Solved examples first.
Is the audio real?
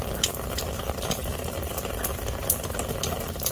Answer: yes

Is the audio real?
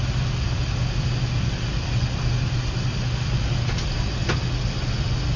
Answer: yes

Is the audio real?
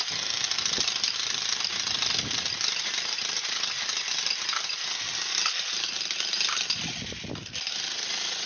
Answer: yes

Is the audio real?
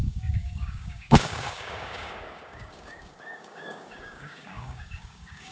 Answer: no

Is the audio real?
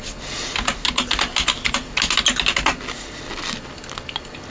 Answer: yes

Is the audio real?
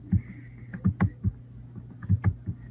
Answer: yes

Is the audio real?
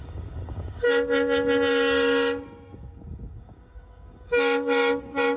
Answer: no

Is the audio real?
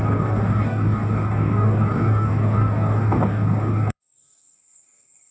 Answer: no